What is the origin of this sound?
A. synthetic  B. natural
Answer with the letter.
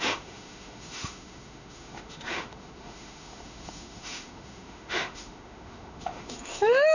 A